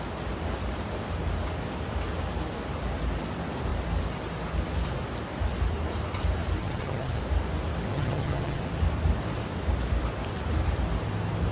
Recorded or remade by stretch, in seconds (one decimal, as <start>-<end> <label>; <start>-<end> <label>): 0.0-6.6 recorded; 6.6-7.2 remade; 7.2-7.9 recorded; 7.9-8.6 remade; 8.6-11.5 recorded